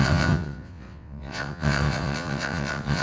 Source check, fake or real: fake